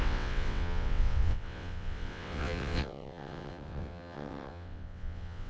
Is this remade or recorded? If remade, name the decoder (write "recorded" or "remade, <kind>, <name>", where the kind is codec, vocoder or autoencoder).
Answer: remade, vocoder, WaveNeXt